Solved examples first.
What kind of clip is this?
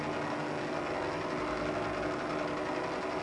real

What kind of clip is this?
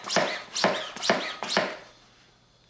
real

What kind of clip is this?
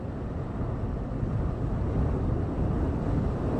real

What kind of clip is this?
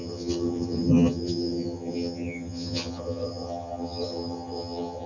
fake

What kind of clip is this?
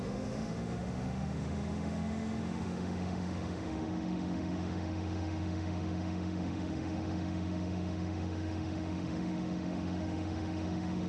fake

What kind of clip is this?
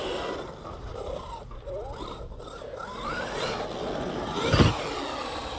real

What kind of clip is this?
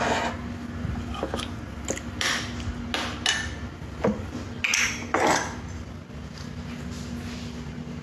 real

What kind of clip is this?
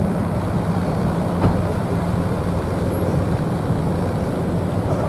fake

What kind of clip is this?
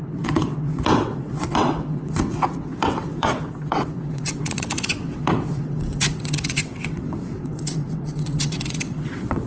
fake